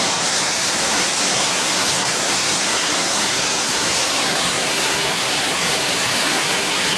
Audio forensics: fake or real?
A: fake